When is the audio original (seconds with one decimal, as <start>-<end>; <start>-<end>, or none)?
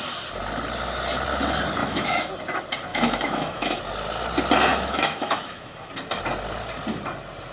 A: 0.0-1.8; 2.3-2.9; 3.8-4.7; 5.9-7.5